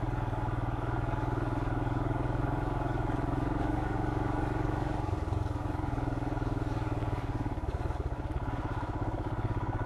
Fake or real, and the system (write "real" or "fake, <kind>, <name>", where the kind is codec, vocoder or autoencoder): fake, codec, DAC